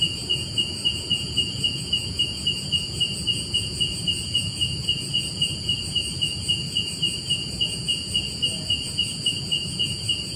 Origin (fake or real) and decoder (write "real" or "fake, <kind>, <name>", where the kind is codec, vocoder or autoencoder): fake, vocoder, Vocos